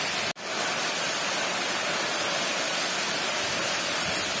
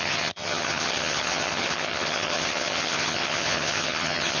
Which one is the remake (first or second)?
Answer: second